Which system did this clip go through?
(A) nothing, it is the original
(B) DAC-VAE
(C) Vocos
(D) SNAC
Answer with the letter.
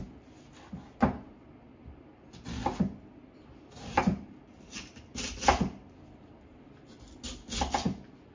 A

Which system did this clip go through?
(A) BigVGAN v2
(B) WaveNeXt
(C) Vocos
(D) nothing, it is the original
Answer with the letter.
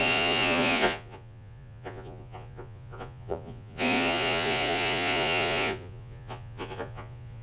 C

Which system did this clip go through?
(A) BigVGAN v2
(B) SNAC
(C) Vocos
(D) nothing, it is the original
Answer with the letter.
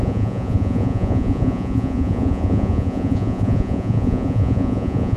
C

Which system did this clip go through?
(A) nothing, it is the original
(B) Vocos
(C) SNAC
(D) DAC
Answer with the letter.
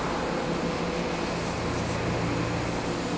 A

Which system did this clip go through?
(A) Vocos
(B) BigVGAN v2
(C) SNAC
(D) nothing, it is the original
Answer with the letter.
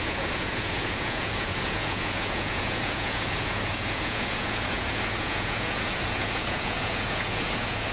A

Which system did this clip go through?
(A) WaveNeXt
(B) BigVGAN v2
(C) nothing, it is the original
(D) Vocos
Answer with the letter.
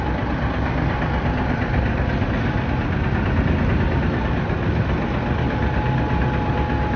C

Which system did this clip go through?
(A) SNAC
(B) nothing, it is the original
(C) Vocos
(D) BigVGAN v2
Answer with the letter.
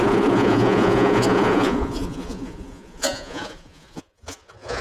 C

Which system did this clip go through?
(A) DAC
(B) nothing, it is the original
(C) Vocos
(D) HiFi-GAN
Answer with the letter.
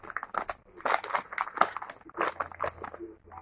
B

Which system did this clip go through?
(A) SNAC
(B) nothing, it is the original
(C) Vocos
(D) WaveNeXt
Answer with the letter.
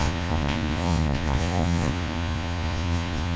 C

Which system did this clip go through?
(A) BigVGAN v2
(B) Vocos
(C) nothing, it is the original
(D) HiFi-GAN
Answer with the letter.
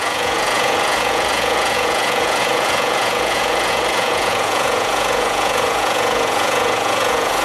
B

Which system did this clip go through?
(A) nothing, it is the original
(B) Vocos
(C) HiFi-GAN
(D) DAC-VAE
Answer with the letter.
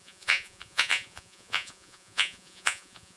B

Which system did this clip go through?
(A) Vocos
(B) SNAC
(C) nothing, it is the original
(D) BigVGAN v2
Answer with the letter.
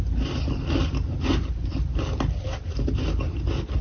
C